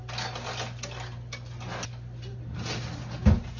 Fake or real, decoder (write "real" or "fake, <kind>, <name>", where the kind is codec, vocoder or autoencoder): real